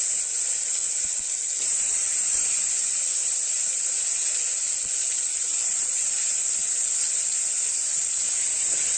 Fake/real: real